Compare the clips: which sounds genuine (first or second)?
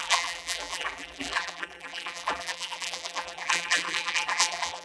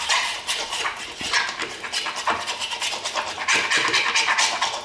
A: second